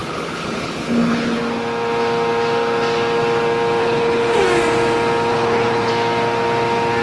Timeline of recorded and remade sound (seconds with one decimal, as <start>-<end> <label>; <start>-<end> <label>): 0.0-1.4 remade; 1.4-3.8 recorded; 3.8-4.4 remade; 4.4-5.3 recorded; 5.3-5.9 remade; 5.9-7.0 recorded